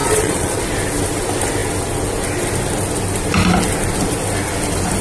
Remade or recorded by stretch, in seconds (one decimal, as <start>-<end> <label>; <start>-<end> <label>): 0.0-0.6 remade; 0.6-5.0 recorded